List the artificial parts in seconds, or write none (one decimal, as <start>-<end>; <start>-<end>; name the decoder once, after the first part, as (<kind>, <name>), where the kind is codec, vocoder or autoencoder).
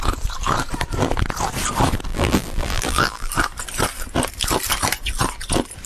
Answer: 2.1-3.3 (vocoder, BigVGAN v2)